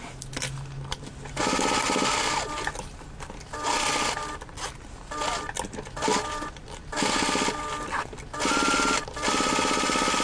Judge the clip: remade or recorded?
recorded